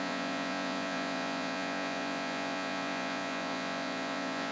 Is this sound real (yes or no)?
no